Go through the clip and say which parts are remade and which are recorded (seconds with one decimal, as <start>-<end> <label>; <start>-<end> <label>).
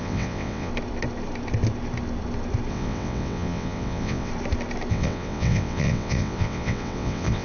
0.0-0.7 remade; 0.7-2.7 recorded; 2.7-4.3 remade; 4.3-4.9 recorded; 4.9-7.4 remade